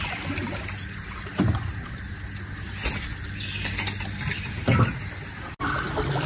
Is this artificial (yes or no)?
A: no